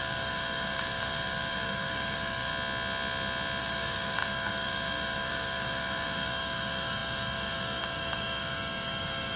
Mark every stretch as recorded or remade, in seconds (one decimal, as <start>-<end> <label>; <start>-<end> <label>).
0.0-2.5 remade; 2.5-3.6 recorded; 3.6-9.4 remade